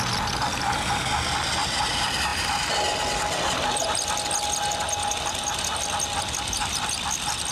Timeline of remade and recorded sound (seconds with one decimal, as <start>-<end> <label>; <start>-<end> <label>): 0.0-7.5 recorded